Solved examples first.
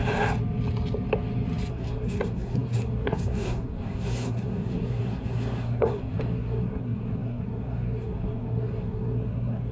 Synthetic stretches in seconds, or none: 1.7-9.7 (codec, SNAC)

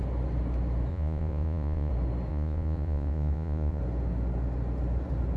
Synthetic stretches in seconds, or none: 0.9-1.9 (vocoder, Vocos); 2.3-3.8

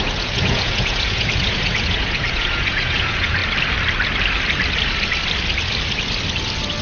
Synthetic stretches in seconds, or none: 0.0-3.4 (vocoder, Vocos)

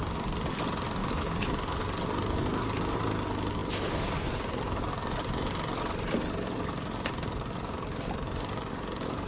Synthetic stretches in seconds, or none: 1.0-2.6 (vocoder, BigVGAN v2); 6.2-8.7

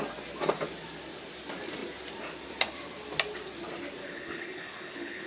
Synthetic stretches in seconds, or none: 4.0-5.3 (codec, HILCodec)

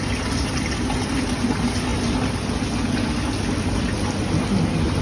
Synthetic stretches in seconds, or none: none

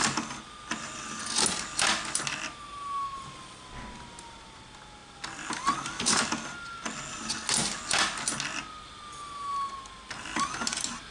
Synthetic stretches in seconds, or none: none

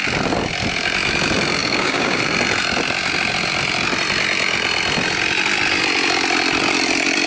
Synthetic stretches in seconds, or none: 1.6-2.2 (codec, DAC)